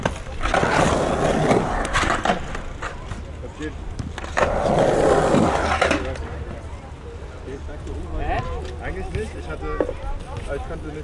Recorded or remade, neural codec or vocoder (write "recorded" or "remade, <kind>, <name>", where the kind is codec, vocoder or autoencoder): recorded